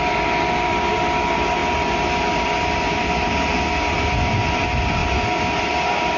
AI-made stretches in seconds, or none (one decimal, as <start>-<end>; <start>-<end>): none